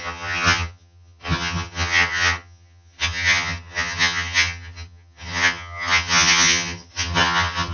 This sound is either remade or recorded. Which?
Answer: remade